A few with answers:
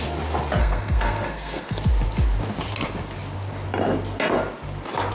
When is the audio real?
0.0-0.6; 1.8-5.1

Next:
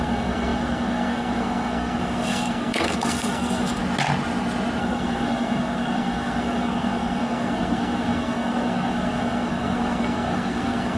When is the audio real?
3.8-4.8

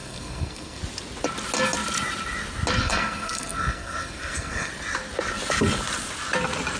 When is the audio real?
0.8-2.8; 4.7-6.8

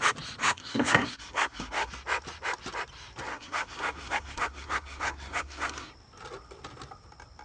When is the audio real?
0.0-0.4; 1.9-3.3; 5.9-7.4

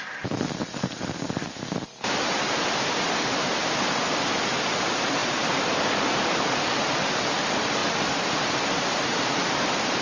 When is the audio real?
0.0-10.0

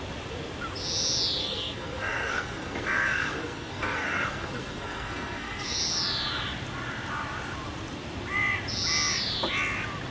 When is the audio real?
0.0-1.4; 5.8-10.1

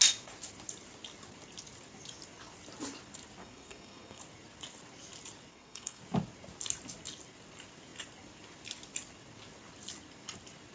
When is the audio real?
0.0-3.4; 4.2-5.5; 6.0-10.7